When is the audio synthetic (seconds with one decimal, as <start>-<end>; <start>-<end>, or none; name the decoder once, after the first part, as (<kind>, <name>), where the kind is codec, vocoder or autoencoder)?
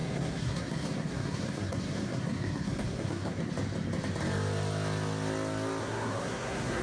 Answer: 0.0-3.5 (codec, SNAC); 5.8-6.8